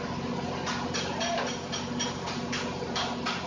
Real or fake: real